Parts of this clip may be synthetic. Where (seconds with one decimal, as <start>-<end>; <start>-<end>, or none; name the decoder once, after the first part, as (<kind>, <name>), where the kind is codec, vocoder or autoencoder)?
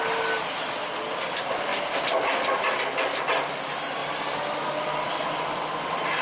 none